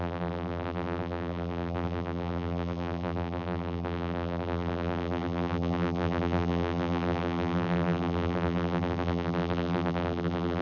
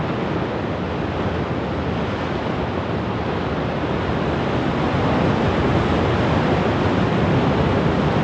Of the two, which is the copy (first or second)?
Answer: first